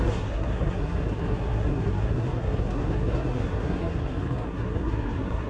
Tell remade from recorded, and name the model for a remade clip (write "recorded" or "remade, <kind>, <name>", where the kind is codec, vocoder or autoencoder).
remade, codec, SNAC